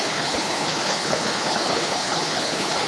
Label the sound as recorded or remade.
remade